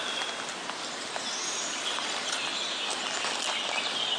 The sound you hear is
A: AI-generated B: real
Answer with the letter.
B